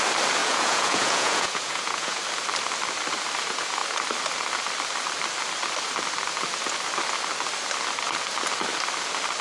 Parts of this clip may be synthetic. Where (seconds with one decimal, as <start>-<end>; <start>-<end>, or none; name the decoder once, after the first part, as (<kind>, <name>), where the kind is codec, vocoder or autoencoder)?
0.4-2.2 (vocoder, Vocos)